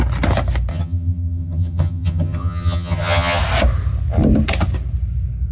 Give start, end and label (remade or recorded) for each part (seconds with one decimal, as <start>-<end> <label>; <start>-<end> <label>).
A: 0.0-0.7 recorded; 0.7-3.4 remade; 3.4-5.5 recorded